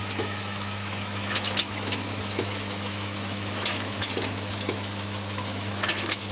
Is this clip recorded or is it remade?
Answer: remade